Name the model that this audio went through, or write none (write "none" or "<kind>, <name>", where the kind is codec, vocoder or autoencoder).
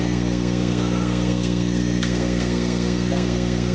codec, SNAC